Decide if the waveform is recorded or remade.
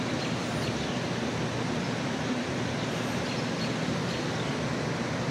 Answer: recorded